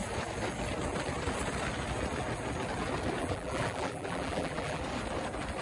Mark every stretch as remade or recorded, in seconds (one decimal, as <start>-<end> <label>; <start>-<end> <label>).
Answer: 0.0-3.2 recorded; 3.2-4.8 remade; 4.8-5.6 recorded